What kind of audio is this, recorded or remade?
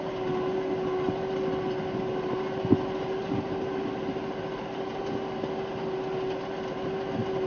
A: recorded